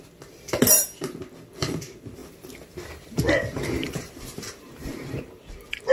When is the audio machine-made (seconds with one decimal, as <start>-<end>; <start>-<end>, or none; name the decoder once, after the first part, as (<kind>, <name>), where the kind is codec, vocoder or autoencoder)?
2.2-5.4 (vocoder, BigVGAN v2)